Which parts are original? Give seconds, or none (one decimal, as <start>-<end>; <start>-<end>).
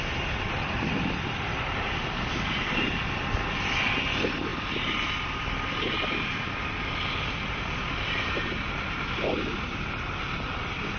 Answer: 4.5-6.8